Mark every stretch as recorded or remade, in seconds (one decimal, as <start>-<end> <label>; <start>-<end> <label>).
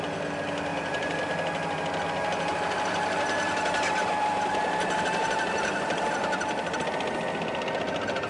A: 0.0-0.7 recorded; 0.7-1.2 remade; 1.2-2.5 recorded; 2.5-6.8 remade; 6.8-8.3 recorded